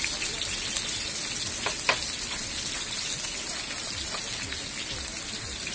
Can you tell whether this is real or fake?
real